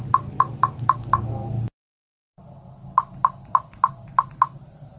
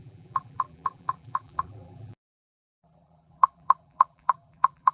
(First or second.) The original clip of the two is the first